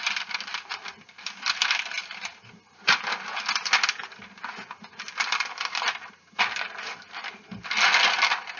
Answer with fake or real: real